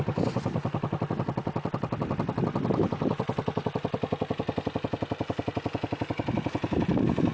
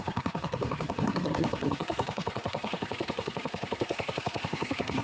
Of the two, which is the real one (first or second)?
first